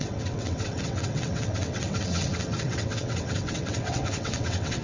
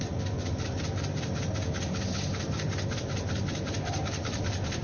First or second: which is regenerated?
first